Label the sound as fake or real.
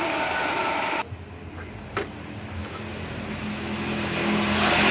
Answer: real